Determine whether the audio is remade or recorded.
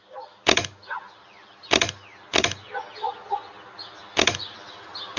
remade